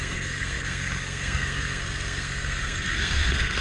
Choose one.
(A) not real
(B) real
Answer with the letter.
A